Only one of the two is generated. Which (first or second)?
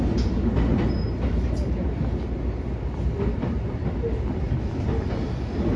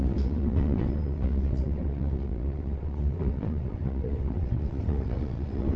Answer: second